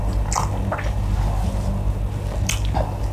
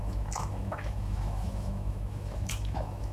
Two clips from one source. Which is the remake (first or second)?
second